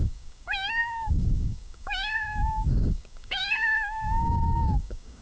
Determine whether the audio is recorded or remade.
remade